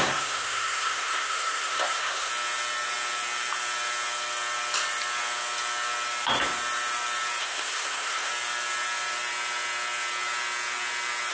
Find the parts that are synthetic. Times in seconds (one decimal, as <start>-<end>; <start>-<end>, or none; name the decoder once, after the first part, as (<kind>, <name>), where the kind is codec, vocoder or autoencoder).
0.0-2.3 (codec, SNAC); 7.4-8.3